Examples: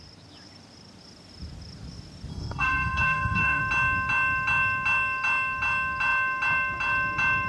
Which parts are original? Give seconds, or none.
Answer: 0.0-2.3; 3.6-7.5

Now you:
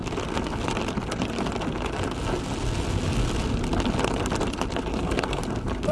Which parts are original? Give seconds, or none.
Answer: 0.0-4.9; 5.4-5.9

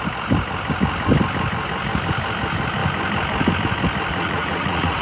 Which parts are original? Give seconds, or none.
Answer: 0.0-4.1

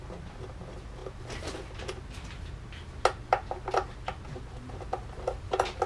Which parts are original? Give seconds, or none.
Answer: 0.0-5.9

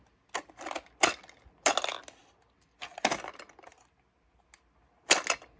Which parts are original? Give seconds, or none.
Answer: 0.0-5.6

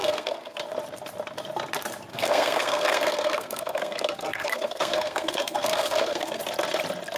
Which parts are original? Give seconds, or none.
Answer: 0.6-2.1; 6.4-7.2